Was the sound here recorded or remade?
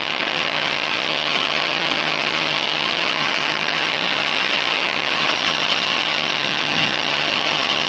remade